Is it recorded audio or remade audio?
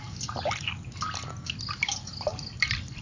recorded